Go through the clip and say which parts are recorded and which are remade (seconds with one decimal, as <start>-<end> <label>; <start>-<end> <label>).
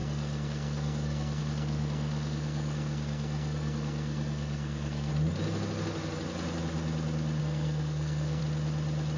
0.0-5.1 remade; 5.1-7.4 recorded; 7.4-8.4 remade; 8.4-9.2 recorded